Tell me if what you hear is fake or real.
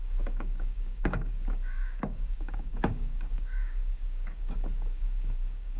fake